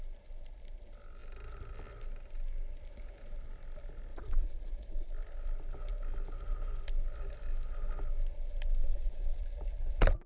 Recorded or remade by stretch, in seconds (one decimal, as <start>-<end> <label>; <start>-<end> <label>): 0.0-4.1 recorded; 4.1-5.1 remade; 5.1-8.8 recorded; 8.8-9.4 remade; 9.4-10.3 recorded